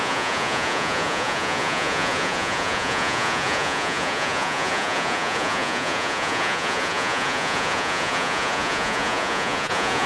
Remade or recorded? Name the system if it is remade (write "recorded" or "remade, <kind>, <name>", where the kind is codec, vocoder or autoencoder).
remade, vocoder, Vocos